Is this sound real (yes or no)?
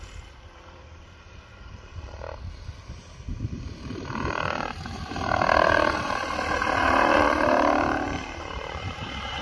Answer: no